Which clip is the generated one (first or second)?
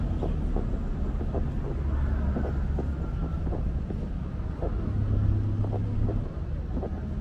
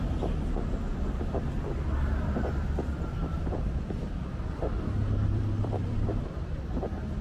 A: second